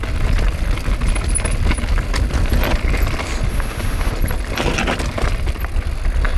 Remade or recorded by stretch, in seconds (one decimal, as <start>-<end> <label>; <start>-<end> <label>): 0.0-3.5 recorded; 3.5-4.1 remade; 4.1-6.4 recorded